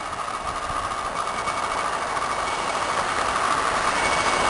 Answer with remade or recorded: recorded